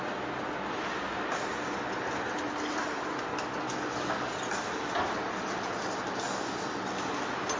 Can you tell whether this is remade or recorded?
recorded